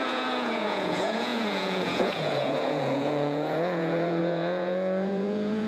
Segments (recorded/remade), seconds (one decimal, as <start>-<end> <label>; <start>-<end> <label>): 0.0-5.7 remade

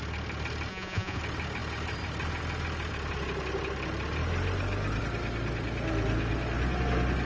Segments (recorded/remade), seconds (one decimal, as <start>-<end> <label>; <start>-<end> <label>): 0.0-0.7 recorded; 0.7-1.2 remade; 1.2-7.3 recorded

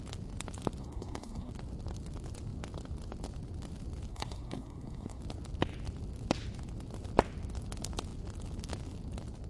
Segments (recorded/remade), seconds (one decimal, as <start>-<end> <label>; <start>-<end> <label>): 0.0-0.8 recorded; 0.8-1.5 remade; 1.5-4.1 recorded; 4.1-5.2 remade; 5.2-9.5 recorded

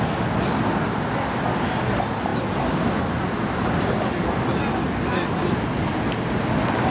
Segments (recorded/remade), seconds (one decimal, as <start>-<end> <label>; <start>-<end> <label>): 0.0-6.9 recorded

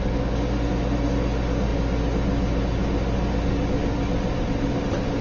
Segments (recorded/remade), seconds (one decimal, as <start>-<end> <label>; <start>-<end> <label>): 0.0-5.2 recorded

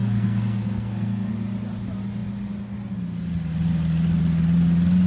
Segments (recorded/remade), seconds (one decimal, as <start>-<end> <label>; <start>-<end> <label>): 0.0-1.3 remade; 1.3-5.1 recorded

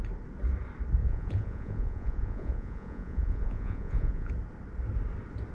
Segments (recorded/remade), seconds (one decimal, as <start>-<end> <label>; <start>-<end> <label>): 0.0-1.0 recorded; 1.0-4.3 remade; 4.3-5.5 recorded

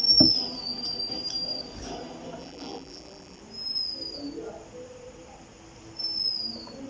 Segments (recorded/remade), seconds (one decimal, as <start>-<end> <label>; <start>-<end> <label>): 0.0-2.4 recorded; 2.4-3.4 remade; 3.4-6.9 recorded